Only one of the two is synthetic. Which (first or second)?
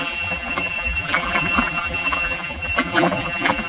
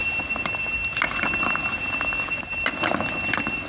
first